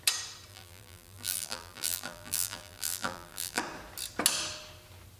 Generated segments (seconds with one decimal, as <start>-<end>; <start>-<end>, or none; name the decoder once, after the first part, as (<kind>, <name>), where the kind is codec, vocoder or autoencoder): 0.5-3.6 (vocoder, BigVGAN v2)